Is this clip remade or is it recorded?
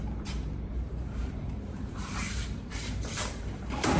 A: remade